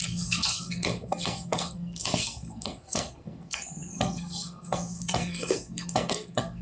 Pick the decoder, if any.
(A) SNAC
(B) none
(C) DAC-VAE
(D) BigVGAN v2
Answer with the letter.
A